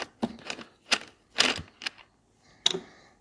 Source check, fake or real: real